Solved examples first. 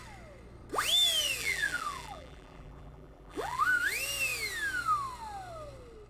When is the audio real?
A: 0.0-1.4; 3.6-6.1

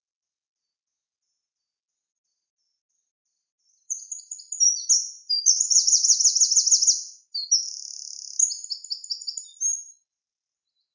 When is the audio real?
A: 0.0-2.1; 4.2-5.4; 6.2-10.9

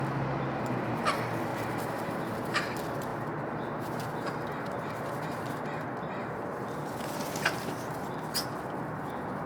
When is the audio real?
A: 0.0-1.5; 2.5-9.5

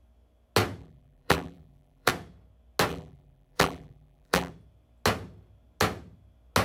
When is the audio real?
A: 0.0-0.8; 2.1-2.9; 4.5-6.6